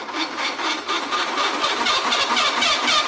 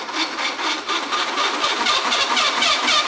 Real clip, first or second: first